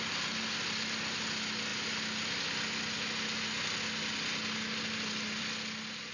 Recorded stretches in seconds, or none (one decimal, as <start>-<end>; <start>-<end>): 0.0-6.1